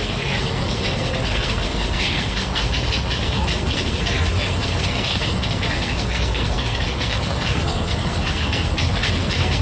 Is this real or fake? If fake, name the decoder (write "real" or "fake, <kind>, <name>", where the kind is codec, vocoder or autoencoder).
fake, codec, SNAC